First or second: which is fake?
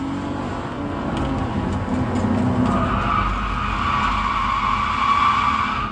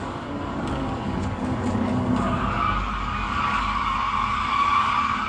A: second